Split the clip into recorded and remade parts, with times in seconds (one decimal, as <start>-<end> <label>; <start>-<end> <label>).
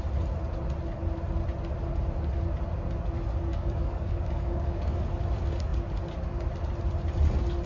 0.0-3.5 recorded; 3.5-5.0 remade; 5.0-7.7 recorded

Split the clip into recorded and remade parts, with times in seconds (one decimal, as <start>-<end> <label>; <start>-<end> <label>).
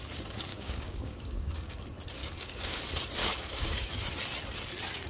0.0-0.5 recorded; 0.5-1.8 remade; 1.8-2.2 recorded; 2.2-2.8 remade; 2.8-3.2 recorded; 3.2-3.9 remade; 3.9-5.1 recorded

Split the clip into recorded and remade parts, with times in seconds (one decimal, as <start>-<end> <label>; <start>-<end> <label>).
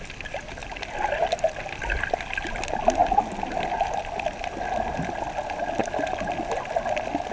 0.0-7.3 recorded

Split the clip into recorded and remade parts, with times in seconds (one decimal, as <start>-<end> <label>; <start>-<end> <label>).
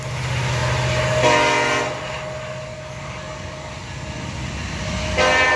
0.0-2.7 recorded; 2.7-3.7 remade; 3.7-5.6 recorded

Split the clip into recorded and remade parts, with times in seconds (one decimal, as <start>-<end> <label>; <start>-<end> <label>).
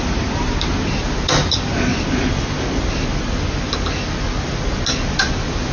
0.0-5.7 recorded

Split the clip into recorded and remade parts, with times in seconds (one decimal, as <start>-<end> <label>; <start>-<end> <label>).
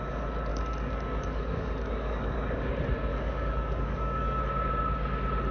0.0-0.5 recorded; 0.5-2.7 remade; 2.7-3.1 recorded; 3.1-4.4 remade; 4.4-5.5 recorded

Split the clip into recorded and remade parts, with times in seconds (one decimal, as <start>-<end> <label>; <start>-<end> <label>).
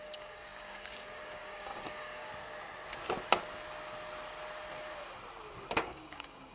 0.0-2.3 remade; 2.3-5.8 recorded; 5.8-6.5 remade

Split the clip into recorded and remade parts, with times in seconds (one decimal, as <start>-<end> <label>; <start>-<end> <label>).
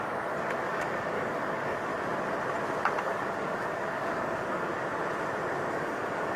0.0-1.9 remade; 1.9-3.0 recorded; 3.0-4.7 remade; 4.7-5.7 recorded; 5.7-6.4 remade